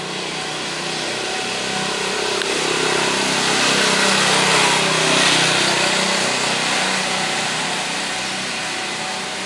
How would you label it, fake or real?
real